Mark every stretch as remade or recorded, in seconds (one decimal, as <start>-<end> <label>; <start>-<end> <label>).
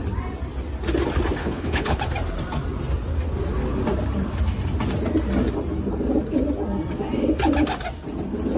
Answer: 0.0-1.4 recorded; 1.4-2.0 remade; 2.0-8.6 recorded